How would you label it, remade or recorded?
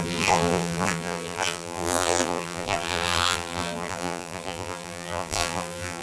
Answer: remade